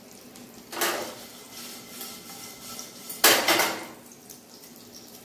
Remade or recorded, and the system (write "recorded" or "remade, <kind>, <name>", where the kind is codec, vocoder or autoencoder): recorded